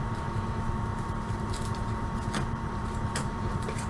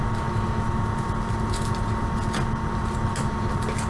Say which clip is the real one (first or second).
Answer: second